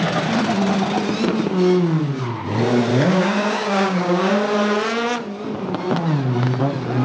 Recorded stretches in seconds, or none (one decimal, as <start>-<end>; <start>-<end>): 0.0-2.9; 4.3-7.0